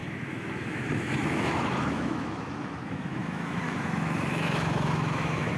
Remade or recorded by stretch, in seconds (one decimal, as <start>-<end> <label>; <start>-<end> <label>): 0.0-5.6 remade